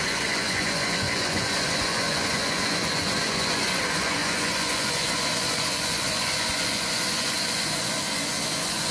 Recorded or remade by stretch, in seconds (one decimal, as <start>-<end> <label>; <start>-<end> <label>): 0.0-8.9 remade